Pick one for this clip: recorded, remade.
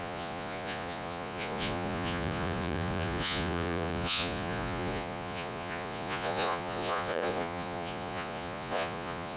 remade